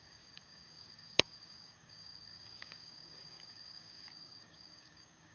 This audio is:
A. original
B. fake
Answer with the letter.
B